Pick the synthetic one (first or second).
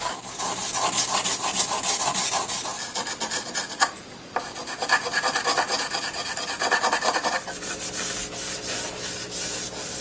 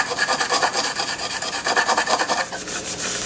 second